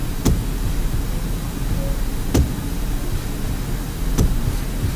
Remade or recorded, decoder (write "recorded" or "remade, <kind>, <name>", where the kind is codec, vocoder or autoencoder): recorded